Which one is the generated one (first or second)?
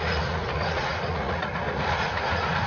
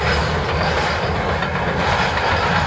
first